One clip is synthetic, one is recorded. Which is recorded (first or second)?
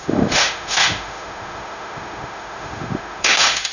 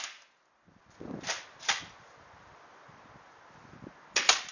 second